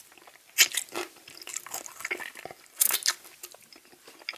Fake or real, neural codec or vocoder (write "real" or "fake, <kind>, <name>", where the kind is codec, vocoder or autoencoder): real